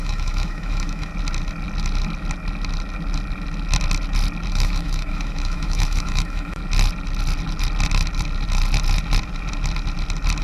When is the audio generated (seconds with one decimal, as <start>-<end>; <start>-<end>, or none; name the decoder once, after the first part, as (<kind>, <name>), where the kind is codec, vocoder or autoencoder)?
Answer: 0.0-1.1 (autoencoder, DAC-VAE); 4.5-6.6